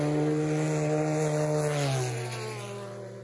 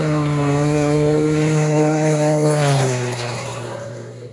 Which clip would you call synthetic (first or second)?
second